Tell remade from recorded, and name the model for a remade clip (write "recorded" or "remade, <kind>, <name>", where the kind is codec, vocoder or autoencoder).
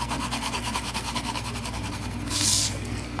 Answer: remade, codec, SNAC